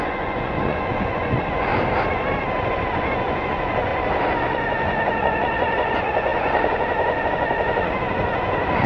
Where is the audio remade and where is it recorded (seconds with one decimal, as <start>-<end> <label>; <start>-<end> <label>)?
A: 0.0-1.7 remade; 1.7-2.7 recorded; 2.7-3.9 remade; 3.9-4.4 recorded; 4.4-8.9 remade